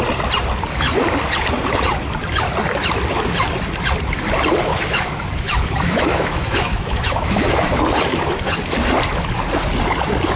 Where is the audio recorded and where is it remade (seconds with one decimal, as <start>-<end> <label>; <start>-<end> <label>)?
0.0-4.7 recorded; 4.7-7.8 remade; 7.8-10.4 recorded